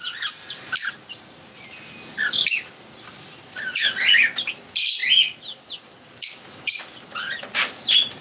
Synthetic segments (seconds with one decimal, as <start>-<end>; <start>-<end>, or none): none